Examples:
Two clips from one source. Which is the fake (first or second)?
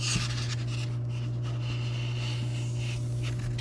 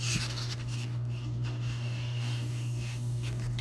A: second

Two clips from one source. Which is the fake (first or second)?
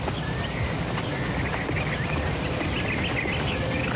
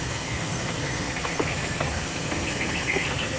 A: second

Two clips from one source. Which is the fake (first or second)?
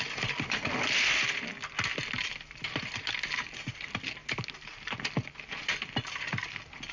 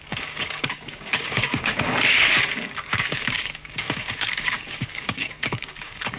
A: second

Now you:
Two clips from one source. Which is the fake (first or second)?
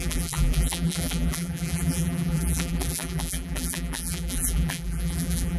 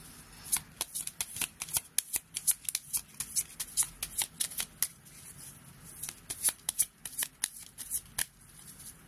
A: first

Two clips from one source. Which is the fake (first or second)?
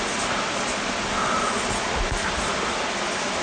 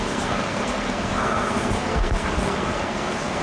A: second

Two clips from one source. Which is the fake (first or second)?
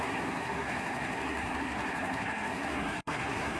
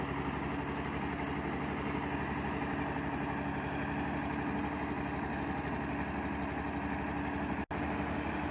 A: first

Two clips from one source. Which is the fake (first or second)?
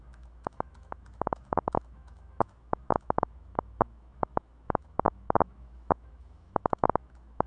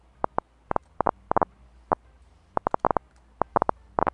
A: first